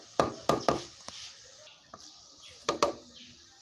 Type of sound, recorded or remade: recorded